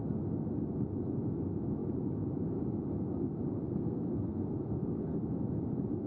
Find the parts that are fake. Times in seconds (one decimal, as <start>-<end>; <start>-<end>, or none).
3.6-4.5